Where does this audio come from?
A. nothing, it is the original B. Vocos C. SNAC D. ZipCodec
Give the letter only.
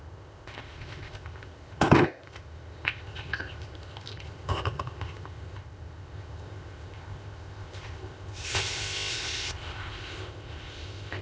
D